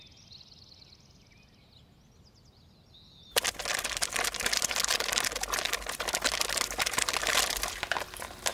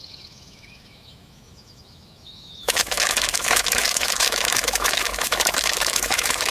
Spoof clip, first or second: second